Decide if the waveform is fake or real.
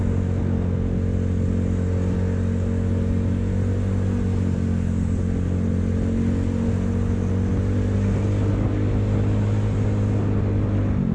real